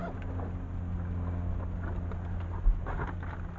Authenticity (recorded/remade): recorded